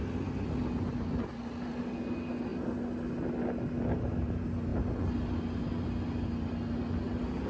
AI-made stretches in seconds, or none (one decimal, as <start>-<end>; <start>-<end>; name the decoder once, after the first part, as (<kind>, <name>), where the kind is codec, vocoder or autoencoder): none